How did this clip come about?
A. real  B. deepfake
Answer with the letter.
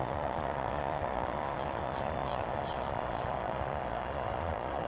B